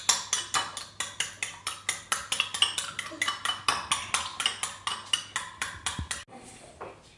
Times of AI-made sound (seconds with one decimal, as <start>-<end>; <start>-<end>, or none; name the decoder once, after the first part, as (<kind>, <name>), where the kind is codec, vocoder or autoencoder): none